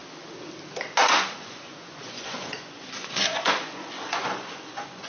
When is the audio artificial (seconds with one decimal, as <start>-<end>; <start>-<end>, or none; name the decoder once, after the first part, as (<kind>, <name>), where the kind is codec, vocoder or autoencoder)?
1.1-5.1 (vocoder, Vocos)